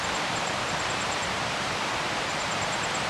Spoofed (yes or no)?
yes